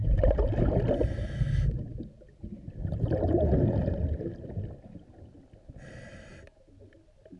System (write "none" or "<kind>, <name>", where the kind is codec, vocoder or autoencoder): none